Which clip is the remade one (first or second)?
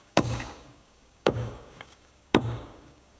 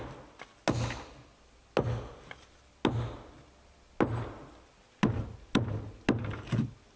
first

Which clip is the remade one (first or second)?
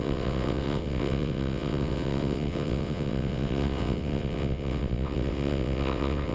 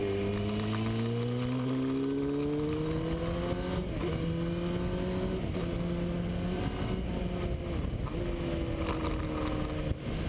first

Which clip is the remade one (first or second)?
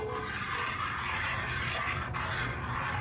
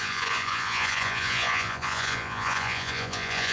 second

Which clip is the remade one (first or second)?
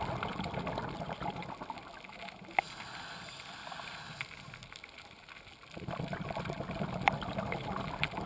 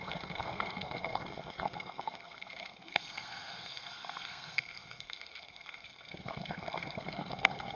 second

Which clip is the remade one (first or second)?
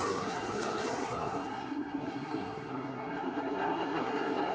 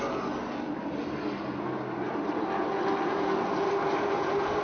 first